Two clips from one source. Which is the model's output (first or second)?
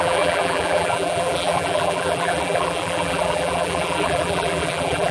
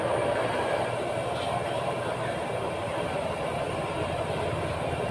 first